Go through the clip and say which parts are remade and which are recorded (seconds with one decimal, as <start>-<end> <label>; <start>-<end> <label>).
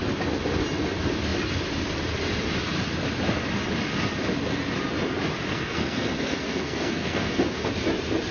0.0-5.5 recorded; 5.5-7.7 remade; 7.7-8.3 recorded